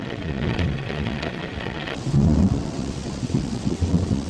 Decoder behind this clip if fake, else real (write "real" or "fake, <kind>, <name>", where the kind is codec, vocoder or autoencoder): fake, vocoder, WaveNeXt